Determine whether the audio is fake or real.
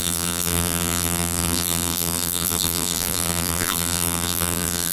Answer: fake